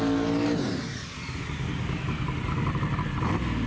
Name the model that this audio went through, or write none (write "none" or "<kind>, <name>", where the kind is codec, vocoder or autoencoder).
none